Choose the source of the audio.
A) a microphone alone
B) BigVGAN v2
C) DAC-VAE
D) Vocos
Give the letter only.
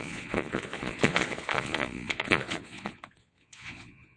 D